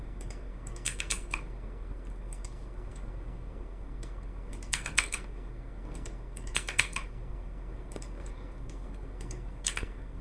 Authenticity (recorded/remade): remade